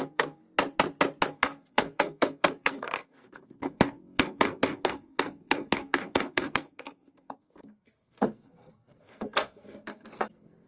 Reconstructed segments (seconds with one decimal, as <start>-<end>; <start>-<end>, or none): 0.0-0.4; 1.3-10.7